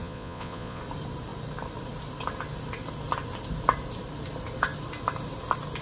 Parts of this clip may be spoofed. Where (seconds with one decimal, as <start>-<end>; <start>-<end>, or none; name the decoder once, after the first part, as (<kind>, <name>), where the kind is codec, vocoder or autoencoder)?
0.0-0.8 (vocoder, Vocos)